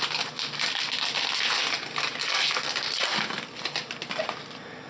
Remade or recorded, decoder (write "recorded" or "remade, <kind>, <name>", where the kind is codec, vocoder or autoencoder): recorded